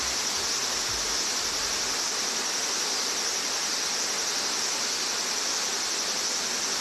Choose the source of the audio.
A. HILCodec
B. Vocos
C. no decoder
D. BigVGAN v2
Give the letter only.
C